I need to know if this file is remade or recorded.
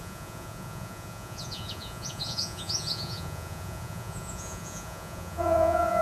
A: remade